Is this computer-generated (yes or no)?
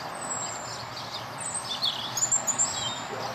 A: no